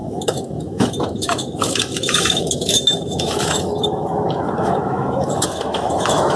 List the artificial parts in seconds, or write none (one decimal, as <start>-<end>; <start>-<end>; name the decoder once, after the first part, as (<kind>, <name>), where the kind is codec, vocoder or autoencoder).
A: 0.0-6.4 (autoencoder, DAC-VAE)